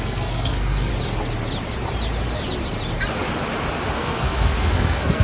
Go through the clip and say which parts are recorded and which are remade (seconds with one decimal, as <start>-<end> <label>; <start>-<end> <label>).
0.0-0.9 remade; 0.9-4.0 recorded; 4.0-5.2 remade